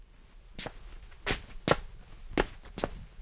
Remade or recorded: recorded